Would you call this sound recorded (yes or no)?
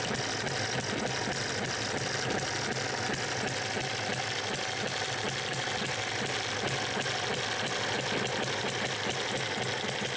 yes